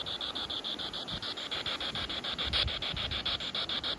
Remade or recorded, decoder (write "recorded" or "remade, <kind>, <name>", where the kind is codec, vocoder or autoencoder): recorded